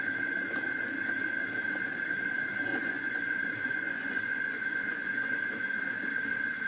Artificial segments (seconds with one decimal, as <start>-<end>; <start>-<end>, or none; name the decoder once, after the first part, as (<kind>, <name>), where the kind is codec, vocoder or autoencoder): 2.7-5.4 (vocoder, Vocos)